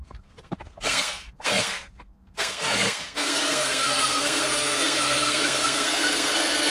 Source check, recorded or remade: remade